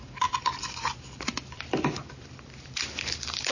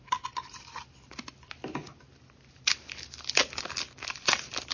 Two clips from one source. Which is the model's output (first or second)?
first